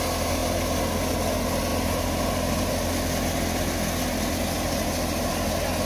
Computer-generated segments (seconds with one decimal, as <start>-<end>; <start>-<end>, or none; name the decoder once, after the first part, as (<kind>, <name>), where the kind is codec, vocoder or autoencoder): none